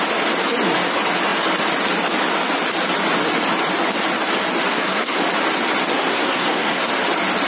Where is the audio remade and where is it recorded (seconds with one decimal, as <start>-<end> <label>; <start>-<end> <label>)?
0.0-4.7 recorded; 4.7-5.2 remade; 5.2-5.9 recorded; 5.9-6.9 remade; 6.9-7.5 recorded